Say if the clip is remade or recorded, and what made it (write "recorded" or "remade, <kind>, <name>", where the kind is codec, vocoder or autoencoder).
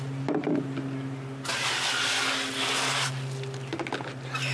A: recorded